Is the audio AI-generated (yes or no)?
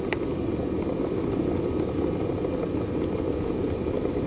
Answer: no